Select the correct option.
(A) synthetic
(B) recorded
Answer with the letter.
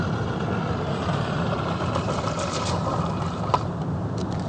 B